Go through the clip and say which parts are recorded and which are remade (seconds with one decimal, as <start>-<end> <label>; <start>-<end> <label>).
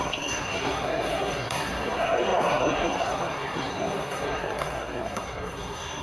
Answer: 0.0-6.0 remade